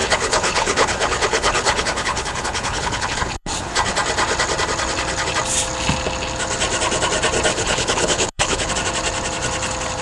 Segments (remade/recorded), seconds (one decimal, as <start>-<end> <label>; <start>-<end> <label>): 0.0-3.7 remade; 3.7-7.5 recorded; 7.5-8.7 remade; 8.7-10.0 recorded